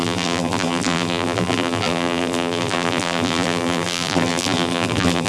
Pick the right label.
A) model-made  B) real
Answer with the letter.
A